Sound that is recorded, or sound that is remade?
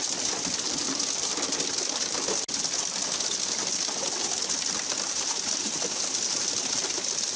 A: recorded